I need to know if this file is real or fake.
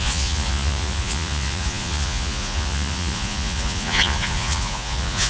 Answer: fake